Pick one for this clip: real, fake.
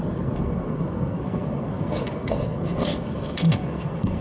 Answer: fake